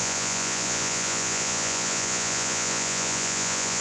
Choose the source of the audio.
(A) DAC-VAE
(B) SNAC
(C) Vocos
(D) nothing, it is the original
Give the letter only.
C